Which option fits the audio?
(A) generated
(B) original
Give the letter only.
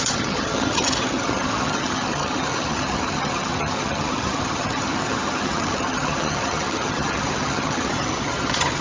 A